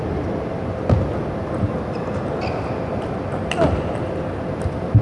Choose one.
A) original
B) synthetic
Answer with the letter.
A